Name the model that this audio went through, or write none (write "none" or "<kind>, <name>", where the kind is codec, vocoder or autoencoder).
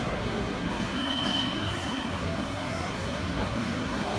codec, SNAC